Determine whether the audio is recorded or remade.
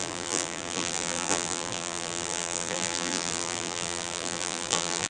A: remade